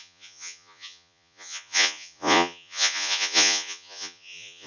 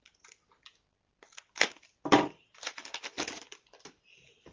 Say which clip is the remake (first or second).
first